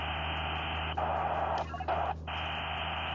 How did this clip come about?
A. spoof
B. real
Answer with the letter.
B